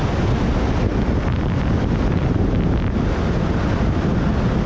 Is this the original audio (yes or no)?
yes